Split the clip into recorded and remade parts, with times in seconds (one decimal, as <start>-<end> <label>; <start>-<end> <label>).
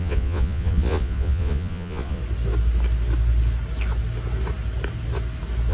0.0-2.2 remade; 2.2-5.7 recorded